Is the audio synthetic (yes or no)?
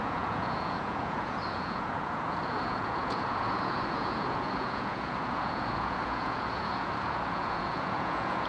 yes